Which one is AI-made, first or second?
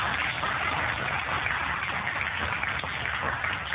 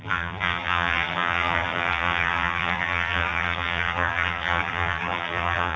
second